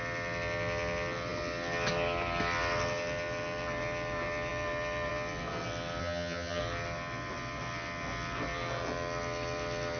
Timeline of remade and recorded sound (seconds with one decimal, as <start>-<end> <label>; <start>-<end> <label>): 0.0-6.0 recorded; 6.0-6.6 remade; 6.6-10.0 recorded